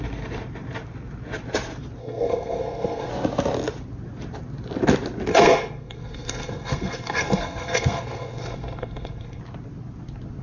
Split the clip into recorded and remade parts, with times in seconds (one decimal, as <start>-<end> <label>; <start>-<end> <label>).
0.0-2.0 recorded; 2.0-3.1 remade; 3.1-5.3 recorded; 5.3-9.4 remade; 9.4-10.4 recorded